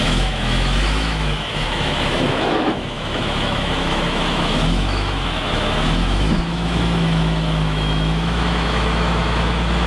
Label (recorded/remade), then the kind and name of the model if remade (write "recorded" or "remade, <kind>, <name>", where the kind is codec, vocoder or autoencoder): remade, autoencoder, DAC-VAE